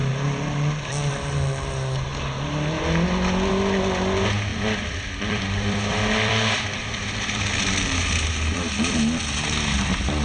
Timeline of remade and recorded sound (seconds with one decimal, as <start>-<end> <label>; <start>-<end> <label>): 0.0-1.1 remade; 1.1-4.5 recorded; 4.5-8.3 remade; 8.3-10.2 recorded